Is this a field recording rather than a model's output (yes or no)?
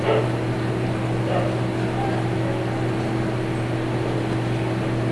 yes